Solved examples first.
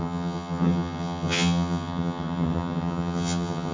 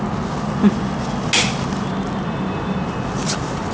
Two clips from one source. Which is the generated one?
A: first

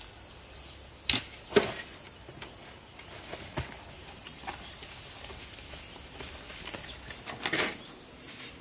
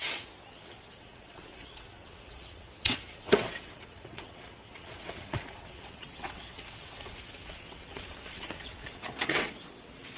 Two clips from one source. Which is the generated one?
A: second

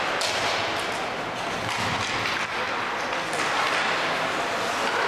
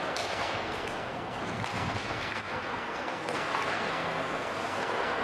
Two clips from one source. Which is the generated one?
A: second